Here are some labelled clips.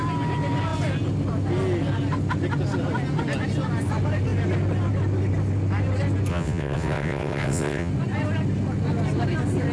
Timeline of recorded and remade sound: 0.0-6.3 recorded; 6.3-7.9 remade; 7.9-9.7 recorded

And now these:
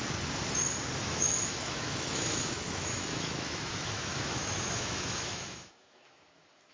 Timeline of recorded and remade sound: 0.0-1.0 recorded; 1.0-6.7 remade

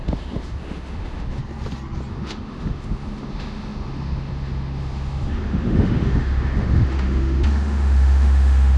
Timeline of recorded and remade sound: 0.0-1.4 remade; 1.4-2.1 recorded; 2.1-8.8 remade

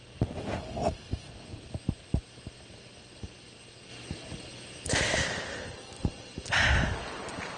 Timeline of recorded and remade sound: 0.0-3.9 recorded; 3.9-4.9 remade; 4.9-7.6 recorded

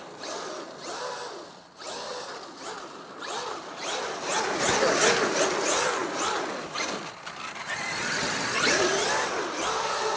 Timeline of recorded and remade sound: 0.0-10.2 recorded

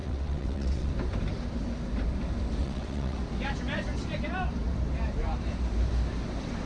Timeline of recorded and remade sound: 0.0-0.9 remade; 0.9-2.6 recorded; 2.6-3.2 remade; 3.2-6.7 recorded

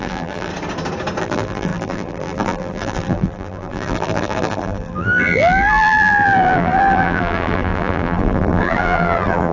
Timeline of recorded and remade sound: 0.0-0.5 remade; 0.5-1.2 recorded; 1.2-9.5 remade